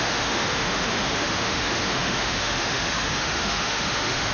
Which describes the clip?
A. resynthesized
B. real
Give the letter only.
A